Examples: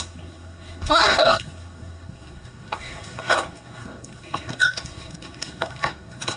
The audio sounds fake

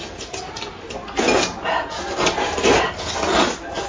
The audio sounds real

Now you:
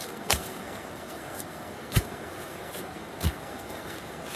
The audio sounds fake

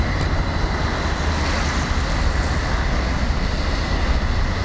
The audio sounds real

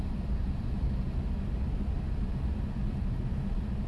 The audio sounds real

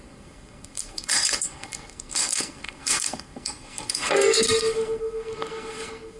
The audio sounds fake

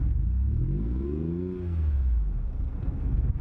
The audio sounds fake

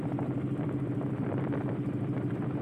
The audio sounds real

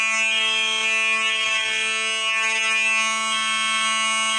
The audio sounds real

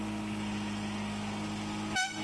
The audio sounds real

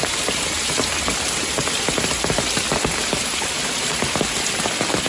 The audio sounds real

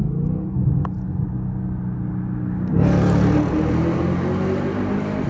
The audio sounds real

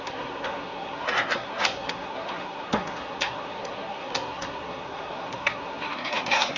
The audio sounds fake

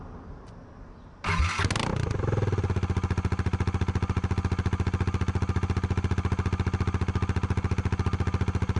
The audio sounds real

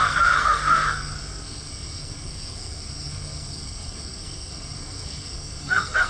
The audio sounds fake